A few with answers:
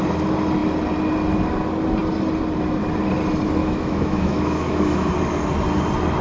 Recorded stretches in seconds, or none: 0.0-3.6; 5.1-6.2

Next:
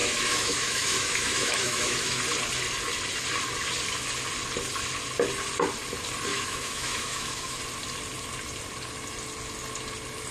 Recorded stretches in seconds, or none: 2.2-6.3; 7.6-10.3